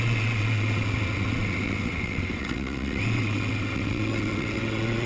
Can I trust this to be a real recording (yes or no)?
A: no